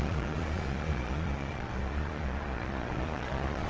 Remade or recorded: remade